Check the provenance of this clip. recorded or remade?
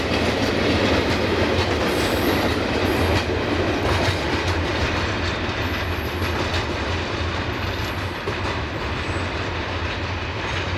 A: recorded